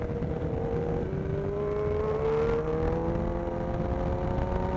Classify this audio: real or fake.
real